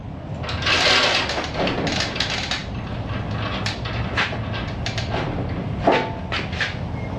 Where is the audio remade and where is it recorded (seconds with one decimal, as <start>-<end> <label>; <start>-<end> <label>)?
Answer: 0.0-7.2 recorded